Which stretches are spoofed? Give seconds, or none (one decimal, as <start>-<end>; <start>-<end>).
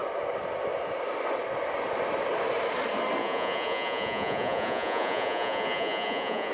3.2-6.5